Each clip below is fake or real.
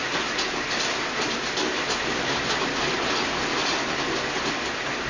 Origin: real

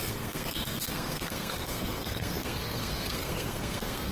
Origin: fake